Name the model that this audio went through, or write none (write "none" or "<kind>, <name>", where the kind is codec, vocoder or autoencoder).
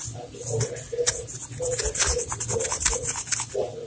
none